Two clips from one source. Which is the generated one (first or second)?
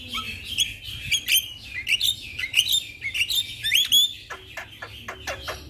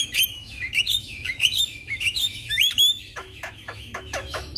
second